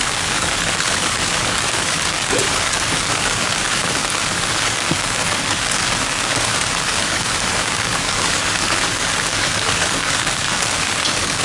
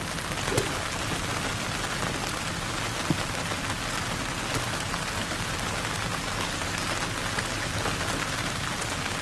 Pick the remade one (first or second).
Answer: first